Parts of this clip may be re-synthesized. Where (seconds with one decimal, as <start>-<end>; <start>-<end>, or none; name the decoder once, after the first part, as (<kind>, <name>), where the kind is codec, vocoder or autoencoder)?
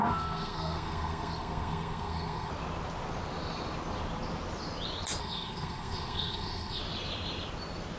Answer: 0.0-2.5 (codec, SNAC); 5.2-6.8